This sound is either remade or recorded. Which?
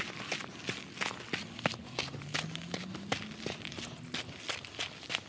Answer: recorded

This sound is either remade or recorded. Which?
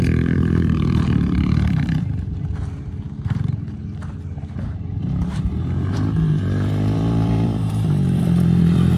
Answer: remade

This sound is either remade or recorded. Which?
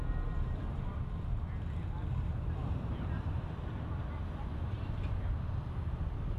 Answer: recorded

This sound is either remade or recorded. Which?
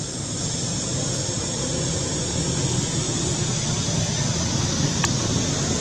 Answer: recorded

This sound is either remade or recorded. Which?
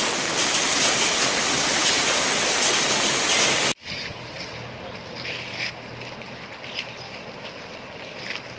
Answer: recorded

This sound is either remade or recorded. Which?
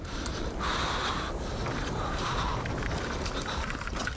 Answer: remade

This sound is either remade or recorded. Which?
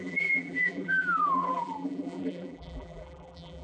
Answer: remade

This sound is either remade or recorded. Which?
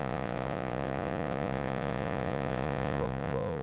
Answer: remade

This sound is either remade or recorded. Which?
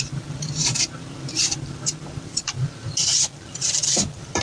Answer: remade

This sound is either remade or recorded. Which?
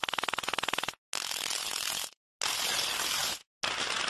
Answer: recorded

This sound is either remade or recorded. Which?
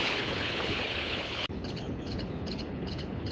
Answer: remade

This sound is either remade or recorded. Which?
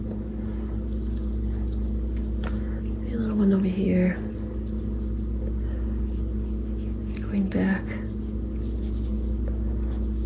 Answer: recorded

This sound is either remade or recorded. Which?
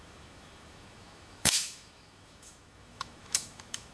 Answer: remade